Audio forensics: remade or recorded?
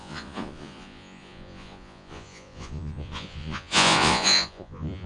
remade